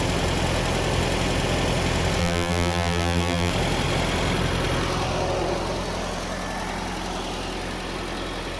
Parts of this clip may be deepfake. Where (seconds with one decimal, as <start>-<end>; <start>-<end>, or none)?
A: 2.2-3.5